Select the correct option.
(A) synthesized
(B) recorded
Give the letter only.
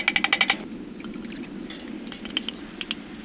B